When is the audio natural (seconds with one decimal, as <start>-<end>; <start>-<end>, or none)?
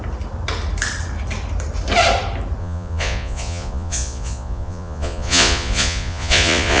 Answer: 0.0-2.6